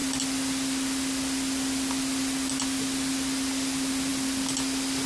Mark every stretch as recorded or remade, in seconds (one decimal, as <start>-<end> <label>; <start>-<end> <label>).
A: 0.0-5.1 recorded